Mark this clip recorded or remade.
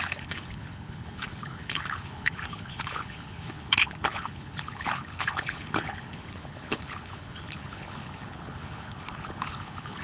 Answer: remade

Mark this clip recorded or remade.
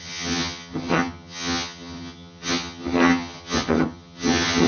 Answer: remade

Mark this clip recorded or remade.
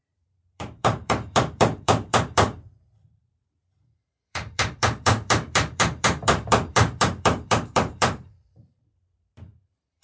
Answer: remade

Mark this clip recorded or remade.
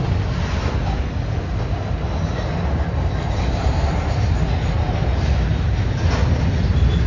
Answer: recorded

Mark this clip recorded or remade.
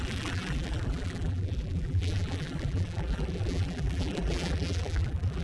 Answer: remade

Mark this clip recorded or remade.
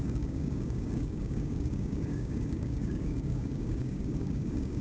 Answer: remade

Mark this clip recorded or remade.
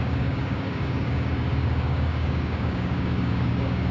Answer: remade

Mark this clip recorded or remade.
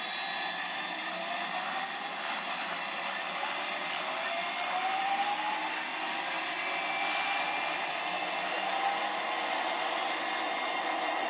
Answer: recorded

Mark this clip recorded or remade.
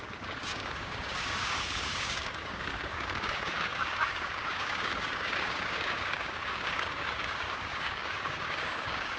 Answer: remade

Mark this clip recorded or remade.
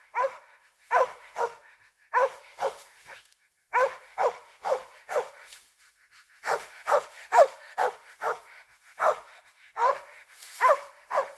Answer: remade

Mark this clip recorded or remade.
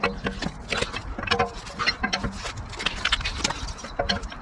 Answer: recorded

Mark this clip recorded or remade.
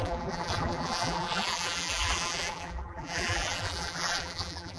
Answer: remade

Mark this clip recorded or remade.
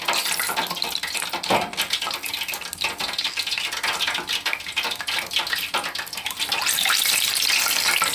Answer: recorded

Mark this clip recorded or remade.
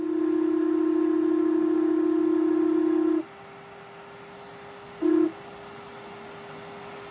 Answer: recorded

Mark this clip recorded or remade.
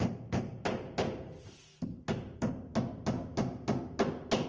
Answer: recorded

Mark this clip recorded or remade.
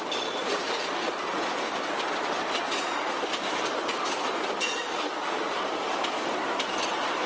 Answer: remade